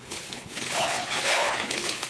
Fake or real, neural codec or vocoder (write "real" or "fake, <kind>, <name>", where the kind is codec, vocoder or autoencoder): fake, codec, HILCodec